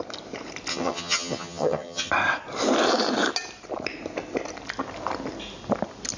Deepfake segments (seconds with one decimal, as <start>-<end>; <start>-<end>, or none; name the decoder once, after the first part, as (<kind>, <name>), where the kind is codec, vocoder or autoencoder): 0.7-2.1 (vocoder, HiFi-GAN)